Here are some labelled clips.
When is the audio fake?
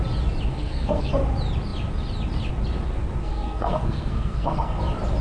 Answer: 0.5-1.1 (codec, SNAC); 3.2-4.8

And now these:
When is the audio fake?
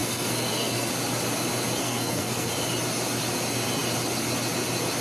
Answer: 0.0-0.9 (codec, SNAC); 1.8-2.5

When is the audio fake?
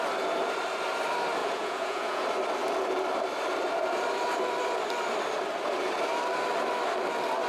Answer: 1.4-2.2 (vocoder, Vocos)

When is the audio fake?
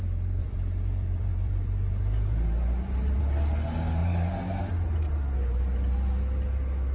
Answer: 0.4-3.2 (vocoder, BigVGAN v2); 4.0-4.6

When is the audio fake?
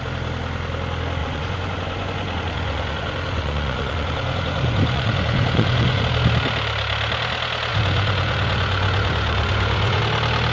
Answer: 1.2-6.0 (vocoder, Vocos); 7.7-10.0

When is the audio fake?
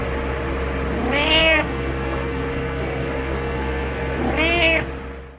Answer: 1.4-4.2 (codec, SNAC)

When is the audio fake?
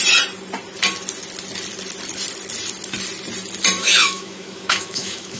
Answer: 3.8-5.4 (autoencoder, DAC-VAE)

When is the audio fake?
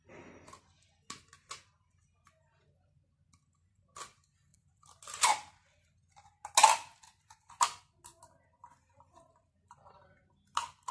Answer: none